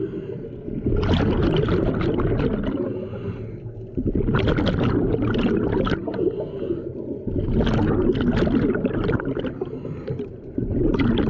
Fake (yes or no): no